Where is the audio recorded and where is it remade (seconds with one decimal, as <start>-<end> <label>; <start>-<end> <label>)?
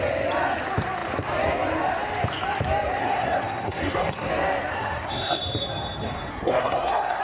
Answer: 0.0-3.0 recorded; 3.0-4.3 remade; 4.3-4.7 recorded; 4.7-5.4 remade; 5.4-6.3 recorded; 6.3-7.2 remade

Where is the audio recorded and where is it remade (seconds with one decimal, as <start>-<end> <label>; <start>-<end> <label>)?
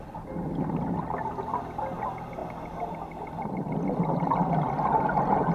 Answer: 0.0-5.5 recorded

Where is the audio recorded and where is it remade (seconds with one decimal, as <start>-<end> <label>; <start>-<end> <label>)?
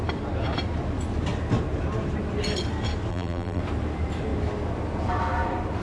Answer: 0.0-3.1 recorded; 3.1-3.6 remade; 3.6-5.8 recorded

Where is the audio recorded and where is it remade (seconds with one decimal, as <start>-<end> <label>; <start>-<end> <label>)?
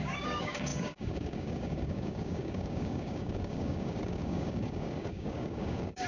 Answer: 0.0-6.1 remade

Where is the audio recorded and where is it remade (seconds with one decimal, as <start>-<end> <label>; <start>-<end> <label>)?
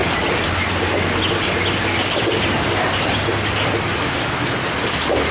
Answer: 0.0-5.3 recorded